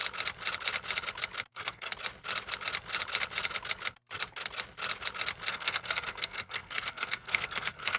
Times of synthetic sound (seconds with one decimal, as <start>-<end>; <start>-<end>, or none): 1.5-1.9; 5.5-8.0

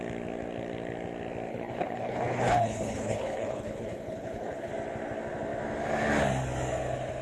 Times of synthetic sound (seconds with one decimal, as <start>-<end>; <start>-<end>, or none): 1.5-4.7

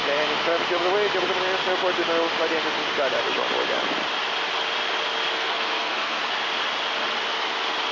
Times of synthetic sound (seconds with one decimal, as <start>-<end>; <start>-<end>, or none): 5.3-6.2

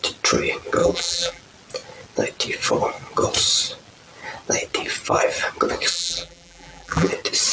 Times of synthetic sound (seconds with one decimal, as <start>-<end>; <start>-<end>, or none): 0.8-1.4; 5.9-7.1

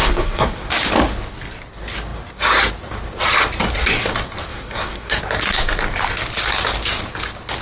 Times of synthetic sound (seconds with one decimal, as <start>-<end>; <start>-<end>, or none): 0.0-0.7; 4.5-5.2

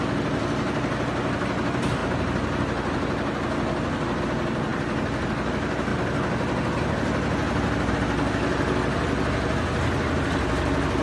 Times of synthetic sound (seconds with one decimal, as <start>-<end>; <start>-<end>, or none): none

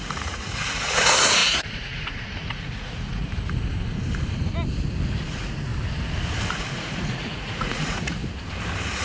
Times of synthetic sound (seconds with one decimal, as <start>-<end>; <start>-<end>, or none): 0.0-3.3; 5.3-5.7; 6.5-8.2